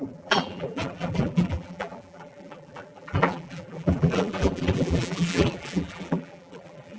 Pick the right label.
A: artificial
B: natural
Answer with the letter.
A